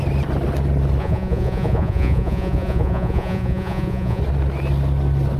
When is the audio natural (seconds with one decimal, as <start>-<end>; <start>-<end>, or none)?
0.0-1.0; 4.2-5.4